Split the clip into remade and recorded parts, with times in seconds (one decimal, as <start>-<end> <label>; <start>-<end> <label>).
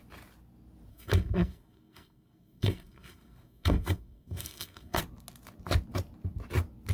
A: 0.0-0.9 recorded; 0.9-5.0 remade; 5.0-6.9 recorded